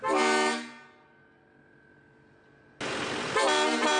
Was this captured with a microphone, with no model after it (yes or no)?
yes